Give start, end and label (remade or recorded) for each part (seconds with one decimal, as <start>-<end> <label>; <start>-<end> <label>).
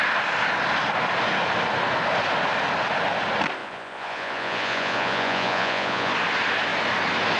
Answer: 0.0-3.6 recorded; 3.6-6.1 remade; 6.1-7.4 recorded